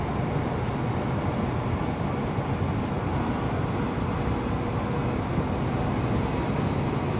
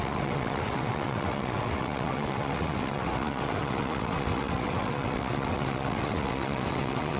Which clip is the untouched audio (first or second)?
first